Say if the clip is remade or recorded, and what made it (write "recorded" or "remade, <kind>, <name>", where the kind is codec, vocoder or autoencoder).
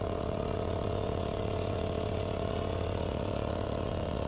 remade, vocoder, WaveNeXt